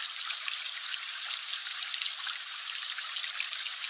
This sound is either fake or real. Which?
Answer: real